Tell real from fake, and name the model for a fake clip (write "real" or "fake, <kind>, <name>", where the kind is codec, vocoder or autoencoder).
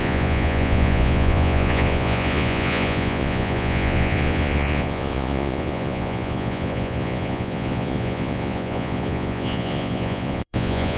fake, vocoder, Vocos